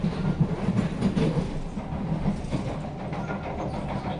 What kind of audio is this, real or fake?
real